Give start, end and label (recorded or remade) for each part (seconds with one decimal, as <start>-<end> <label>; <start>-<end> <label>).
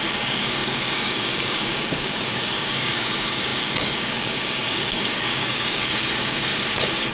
0.0-6.5 remade; 6.5-7.1 recorded